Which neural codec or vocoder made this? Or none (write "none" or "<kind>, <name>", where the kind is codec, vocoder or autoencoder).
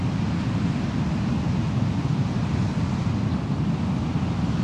none